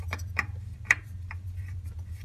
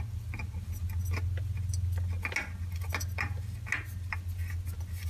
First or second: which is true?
second